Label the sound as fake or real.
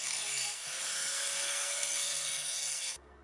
fake